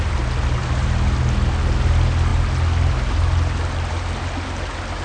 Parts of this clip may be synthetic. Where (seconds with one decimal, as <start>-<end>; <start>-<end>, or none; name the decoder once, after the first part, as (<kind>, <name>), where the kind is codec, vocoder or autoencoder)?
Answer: none